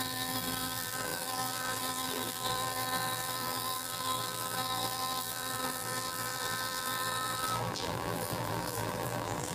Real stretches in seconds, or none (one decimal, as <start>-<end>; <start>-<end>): none